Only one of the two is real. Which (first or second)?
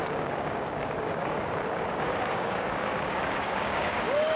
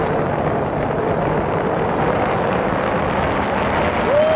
second